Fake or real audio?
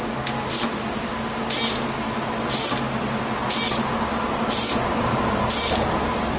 real